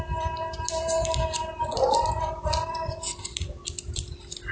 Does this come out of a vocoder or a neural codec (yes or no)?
yes